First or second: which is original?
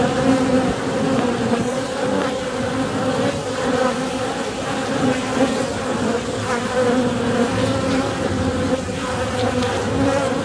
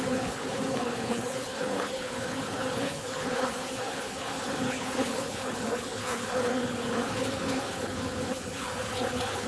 first